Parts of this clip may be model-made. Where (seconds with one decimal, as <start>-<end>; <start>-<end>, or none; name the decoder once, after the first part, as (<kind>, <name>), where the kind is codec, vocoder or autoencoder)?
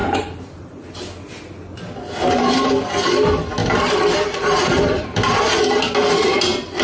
0.0-0.8 (vocoder, BigVGAN v2); 3.6-5.6